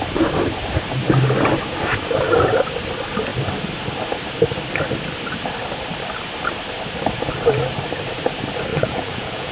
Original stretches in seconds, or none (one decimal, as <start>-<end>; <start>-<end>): 0.0-8.7